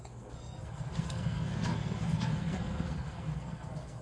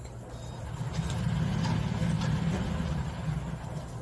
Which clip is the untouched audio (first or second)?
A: second